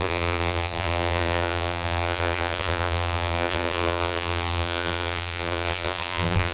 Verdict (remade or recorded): remade